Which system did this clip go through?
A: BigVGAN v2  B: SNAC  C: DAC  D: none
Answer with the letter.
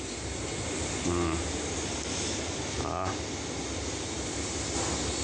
D